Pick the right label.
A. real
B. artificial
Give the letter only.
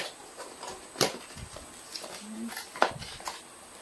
A